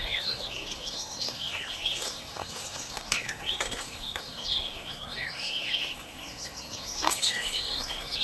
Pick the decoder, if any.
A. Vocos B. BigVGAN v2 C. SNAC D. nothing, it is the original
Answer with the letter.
C